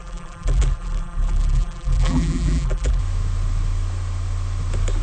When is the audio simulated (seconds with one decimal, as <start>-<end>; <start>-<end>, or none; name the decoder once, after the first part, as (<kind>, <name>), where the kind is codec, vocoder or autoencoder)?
0.0-3.0 (vocoder, BigVGAN v2)